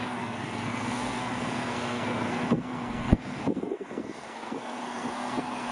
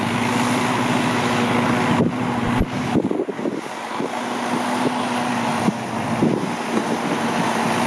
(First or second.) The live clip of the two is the second